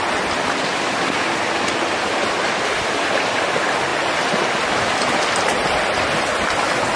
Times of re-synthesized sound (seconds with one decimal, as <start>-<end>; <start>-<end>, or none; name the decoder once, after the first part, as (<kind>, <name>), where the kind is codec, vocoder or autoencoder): none